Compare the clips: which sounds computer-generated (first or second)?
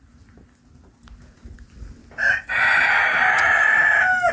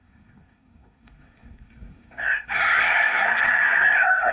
second